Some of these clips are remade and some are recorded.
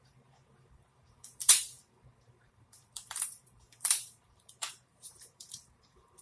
remade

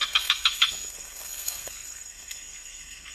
remade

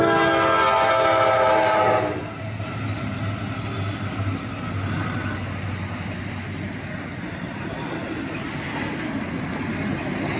recorded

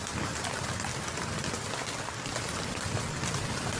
recorded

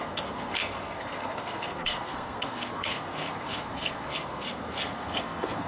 remade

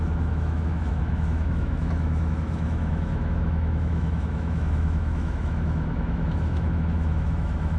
remade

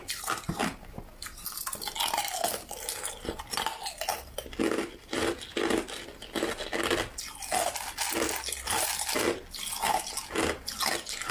recorded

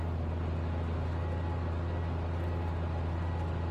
recorded